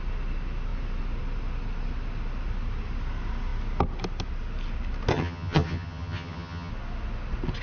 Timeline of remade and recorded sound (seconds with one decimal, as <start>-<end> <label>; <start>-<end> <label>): 0.0-5.1 recorded; 5.1-6.7 remade; 6.7-7.6 recorded